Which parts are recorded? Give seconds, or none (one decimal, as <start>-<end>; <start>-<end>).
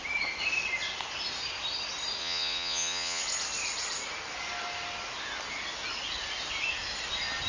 0.0-2.2; 3.2-7.5